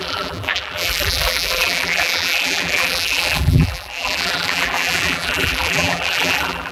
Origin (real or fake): fake